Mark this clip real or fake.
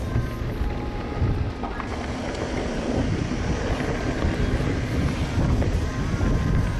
real